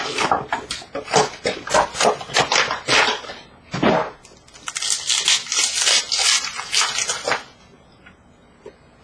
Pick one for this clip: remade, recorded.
recorded